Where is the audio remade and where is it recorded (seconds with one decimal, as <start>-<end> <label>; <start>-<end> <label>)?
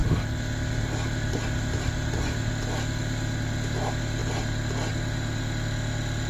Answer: 0.0-6.3 recorded